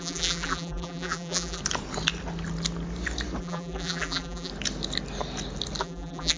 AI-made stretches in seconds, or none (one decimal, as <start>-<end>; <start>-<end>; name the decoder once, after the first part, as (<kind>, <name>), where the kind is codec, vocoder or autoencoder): 0.0-1.6 (vocoder, BigVGAN v2); 3.4-4.5; 5.8-6.4